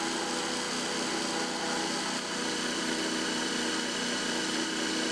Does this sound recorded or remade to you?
recorded